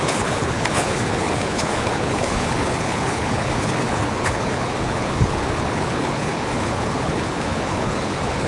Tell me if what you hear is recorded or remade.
remade